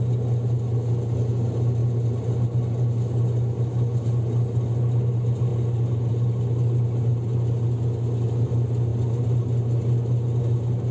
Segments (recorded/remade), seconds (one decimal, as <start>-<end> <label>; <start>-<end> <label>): 0.0-10.9 recorded